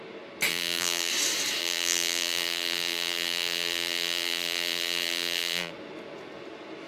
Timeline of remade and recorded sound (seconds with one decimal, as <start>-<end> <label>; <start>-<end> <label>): 0.0-0.5 recorded; 0.5-1.1 remade; 1.1-1.6 recorded; 1.6-5.7 remade; 5.7-6.9 recorded